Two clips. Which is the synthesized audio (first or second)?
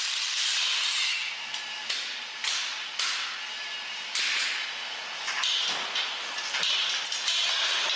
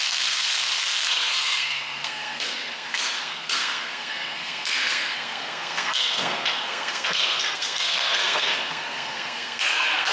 second